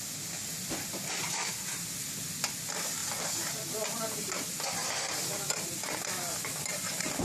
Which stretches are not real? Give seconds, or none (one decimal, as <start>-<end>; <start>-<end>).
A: 0.4-1.5; 3.0-6.1